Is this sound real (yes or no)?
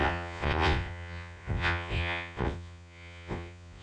no